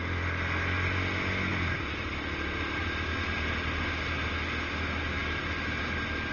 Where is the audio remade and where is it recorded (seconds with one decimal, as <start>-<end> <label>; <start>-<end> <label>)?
0.0-6.3 recorded